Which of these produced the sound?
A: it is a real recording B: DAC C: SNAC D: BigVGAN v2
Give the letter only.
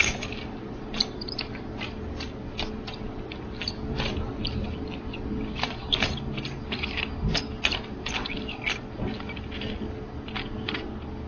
A